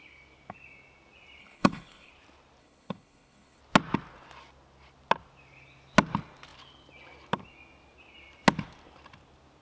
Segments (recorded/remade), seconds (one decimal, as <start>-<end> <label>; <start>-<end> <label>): 0.0-1.4 recorded; 1.4-2.1 remade; 2.1-2.6 recorded; 2.6-3.6 remade; 3.6-9.6 recorded